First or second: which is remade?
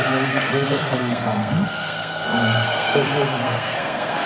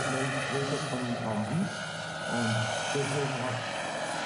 first